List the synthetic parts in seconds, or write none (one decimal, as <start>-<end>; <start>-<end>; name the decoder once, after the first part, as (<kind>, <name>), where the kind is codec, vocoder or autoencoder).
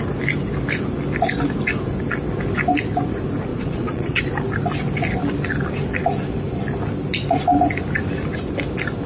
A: 3.5-4.2 (vocoder, Vocos)